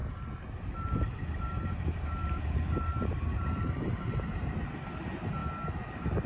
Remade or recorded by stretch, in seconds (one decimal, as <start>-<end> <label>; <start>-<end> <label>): 0.0-3.8 remade; 3.8-6.3 recorded